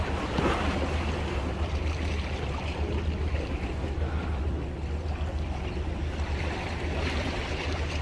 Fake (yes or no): no